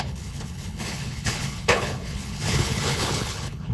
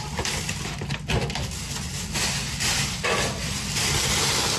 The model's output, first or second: first